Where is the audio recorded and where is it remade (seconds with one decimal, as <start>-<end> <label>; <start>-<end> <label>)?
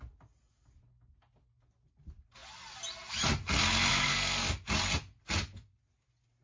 0.0-3.9 recorded; 3.9-4.5 remade; 4.5-6.4 recorded